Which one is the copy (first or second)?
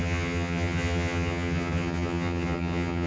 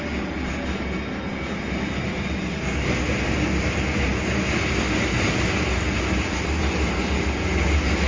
first